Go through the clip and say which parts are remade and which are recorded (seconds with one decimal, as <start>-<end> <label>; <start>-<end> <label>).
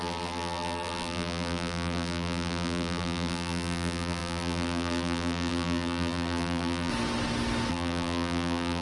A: 0.0-6.9 remade; 6.9-7.7 recorded; 7.7-8.8 remade